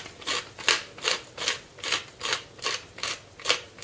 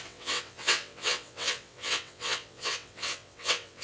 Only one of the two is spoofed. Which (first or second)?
second